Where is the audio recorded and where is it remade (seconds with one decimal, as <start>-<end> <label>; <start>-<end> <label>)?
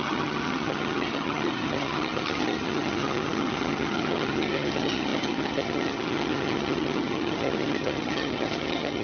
0.0-9.0 remade